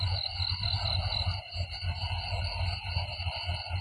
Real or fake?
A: real